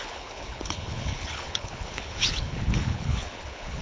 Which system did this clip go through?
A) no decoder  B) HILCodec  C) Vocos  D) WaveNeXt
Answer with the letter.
B